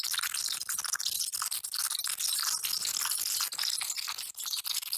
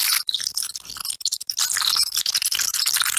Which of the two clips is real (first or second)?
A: first